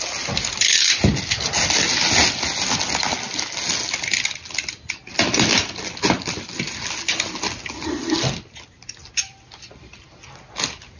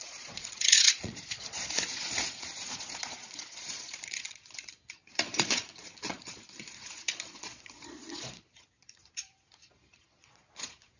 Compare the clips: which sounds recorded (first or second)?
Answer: first